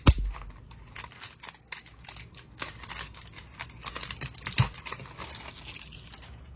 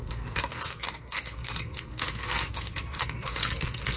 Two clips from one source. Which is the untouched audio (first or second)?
first